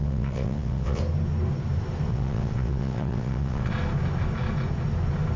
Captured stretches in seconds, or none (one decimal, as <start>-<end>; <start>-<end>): 1.0-2.1; 3.7-5.4